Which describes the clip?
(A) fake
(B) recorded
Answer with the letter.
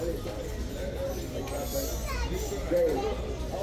B